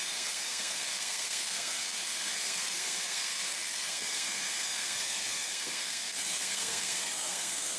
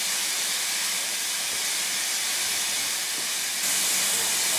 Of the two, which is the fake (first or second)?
first